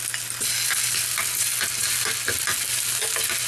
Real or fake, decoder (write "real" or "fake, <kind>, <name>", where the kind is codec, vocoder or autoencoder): real